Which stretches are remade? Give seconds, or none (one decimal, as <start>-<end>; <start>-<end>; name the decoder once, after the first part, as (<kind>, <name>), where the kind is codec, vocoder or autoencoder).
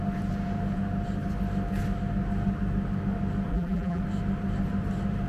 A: 3.5-4.0 (vocoder, BigVGAN v2)